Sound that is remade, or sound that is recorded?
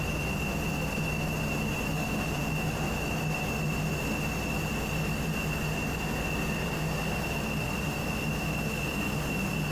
recorded